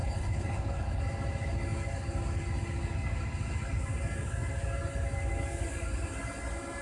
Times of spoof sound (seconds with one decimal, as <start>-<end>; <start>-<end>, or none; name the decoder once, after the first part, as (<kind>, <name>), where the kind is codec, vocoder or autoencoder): 0.0-1.0 (codec, HILCodec)